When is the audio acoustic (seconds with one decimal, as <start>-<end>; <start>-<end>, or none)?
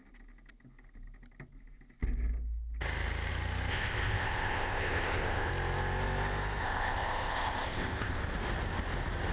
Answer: 0.0-3.7; 5.5-6.6; 8.2-9.3